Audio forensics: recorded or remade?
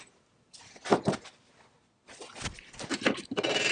recorded